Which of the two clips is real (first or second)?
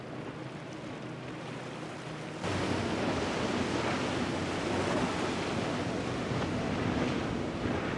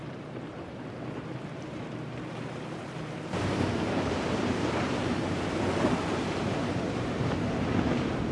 first